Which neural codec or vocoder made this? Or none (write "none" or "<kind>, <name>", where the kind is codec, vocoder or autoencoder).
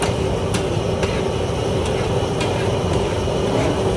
none